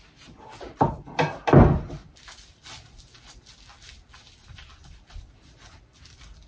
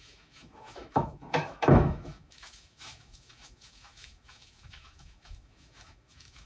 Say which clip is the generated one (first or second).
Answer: second